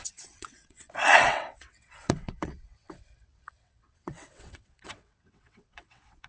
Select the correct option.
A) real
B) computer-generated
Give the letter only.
B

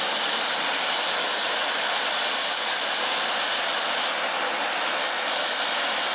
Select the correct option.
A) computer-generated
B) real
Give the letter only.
B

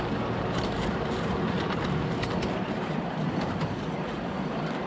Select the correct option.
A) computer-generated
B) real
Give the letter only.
A